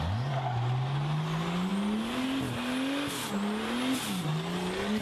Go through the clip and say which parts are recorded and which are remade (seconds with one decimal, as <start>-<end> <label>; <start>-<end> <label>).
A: 0.0-5.0 recorded